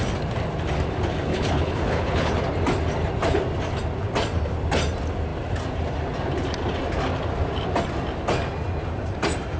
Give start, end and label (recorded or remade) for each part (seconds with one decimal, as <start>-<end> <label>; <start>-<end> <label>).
0.0-1.3 recorded; 1.3-2.3 remade; 2.3-9.6 recorded